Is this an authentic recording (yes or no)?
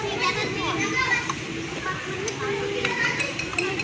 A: yes